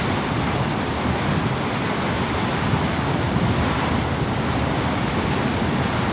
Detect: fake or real real